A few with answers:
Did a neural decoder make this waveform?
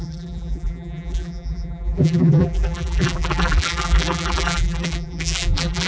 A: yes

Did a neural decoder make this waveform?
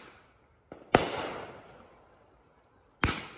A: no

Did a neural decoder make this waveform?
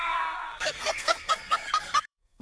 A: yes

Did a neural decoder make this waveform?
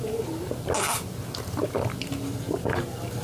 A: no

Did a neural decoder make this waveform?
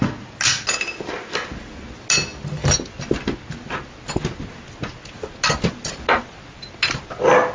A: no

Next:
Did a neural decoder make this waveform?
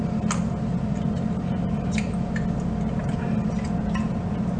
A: no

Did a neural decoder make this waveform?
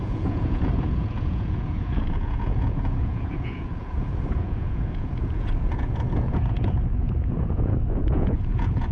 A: yes